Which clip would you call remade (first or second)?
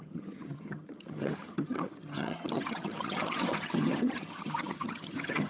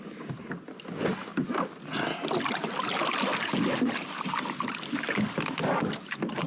first